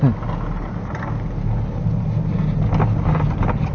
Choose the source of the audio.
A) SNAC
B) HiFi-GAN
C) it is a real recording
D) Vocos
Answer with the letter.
C